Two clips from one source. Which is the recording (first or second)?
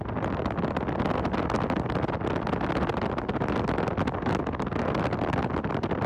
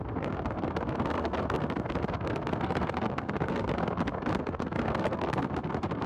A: first